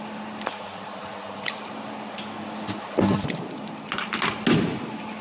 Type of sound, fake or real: real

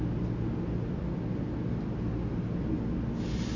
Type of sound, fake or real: real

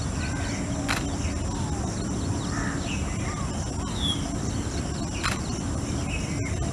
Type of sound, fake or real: real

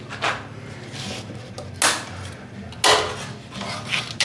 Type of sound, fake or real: real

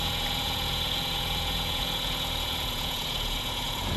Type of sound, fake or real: fake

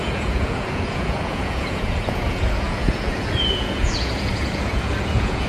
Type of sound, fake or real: fake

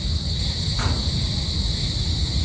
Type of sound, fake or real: real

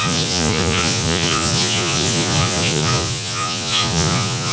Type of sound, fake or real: fake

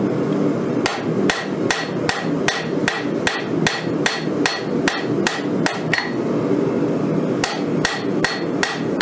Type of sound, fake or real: real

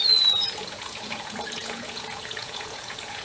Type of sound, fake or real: fake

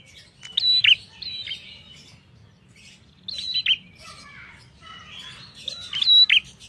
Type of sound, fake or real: real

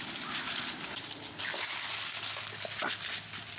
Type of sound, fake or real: real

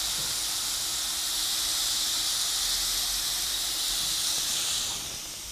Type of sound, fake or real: real